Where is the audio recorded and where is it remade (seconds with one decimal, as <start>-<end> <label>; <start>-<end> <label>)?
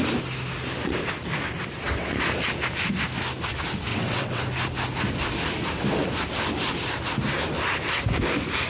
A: 0.0-3.9 recorded; 3.9-4.4 remade; 4.4-8.7 recorded